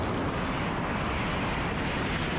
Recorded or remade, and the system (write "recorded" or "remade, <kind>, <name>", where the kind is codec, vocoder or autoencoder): recorded